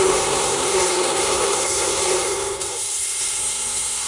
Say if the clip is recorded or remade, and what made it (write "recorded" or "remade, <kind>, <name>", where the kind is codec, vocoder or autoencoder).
remade, codec, SNAC